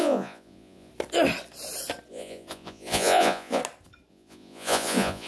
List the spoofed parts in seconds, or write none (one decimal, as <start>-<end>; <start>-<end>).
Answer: 0.0-0.9; 2.1-3.6; 4.1-5.3